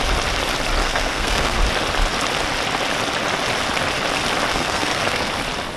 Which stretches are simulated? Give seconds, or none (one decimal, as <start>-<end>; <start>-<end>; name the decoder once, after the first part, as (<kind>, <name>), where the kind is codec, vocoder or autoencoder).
0.8-1.6 (codec, SNAC); 4.5-5.3